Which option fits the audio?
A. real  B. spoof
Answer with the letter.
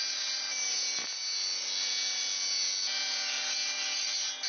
A